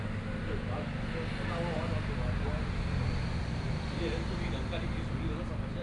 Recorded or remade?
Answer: recorded